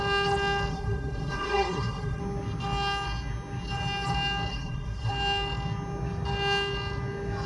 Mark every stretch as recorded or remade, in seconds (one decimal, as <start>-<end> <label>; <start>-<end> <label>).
0.0-0.7 recorded; 0.7-2.2 remade; 2.2-4.5 recorded; 4.5-5.1 remade; 5.1-7.5 recorded